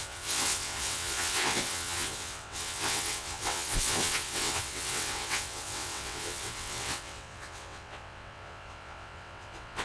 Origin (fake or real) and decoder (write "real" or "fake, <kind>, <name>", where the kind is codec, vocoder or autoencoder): fake, vocoder, WaveNeXt